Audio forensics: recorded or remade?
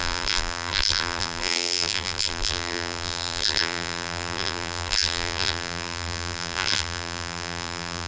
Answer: remade